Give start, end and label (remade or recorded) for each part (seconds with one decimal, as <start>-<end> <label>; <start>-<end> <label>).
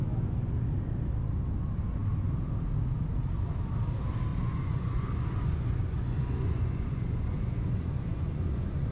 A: 0.0-4.3 recorded; 4.3-8.9 remade